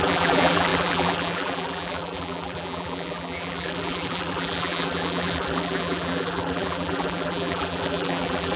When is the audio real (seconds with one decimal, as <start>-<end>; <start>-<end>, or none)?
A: none